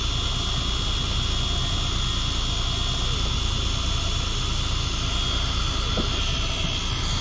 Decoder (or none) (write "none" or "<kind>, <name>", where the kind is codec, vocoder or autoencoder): none